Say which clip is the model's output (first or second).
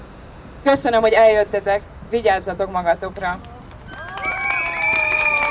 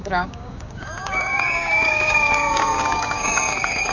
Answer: second